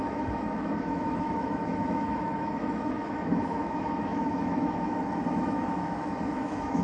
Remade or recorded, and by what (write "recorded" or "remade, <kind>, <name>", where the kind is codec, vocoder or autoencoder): remade, autoencoder, DAC-VAE